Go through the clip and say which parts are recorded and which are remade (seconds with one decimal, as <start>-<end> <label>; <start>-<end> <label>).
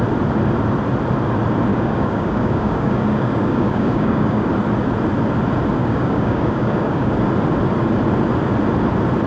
0.0-1.7 recorded; 1.7-4.5 remade; 4.5-5.8 recorded; 5.8-7.2 remade; 7.2-9.3 recorded